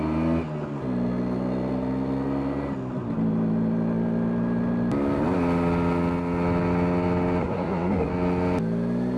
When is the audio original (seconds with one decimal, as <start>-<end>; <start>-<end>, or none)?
0.0-7.4; 8.1-9.2